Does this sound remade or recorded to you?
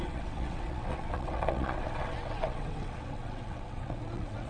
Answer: remade